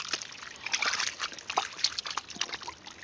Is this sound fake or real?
real